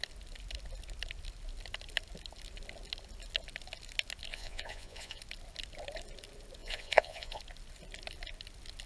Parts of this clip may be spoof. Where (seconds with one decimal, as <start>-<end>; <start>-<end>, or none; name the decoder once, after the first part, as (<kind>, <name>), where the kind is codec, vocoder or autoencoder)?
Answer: 4.3-5.2 (vocoder, Vocos); 6.6-7.4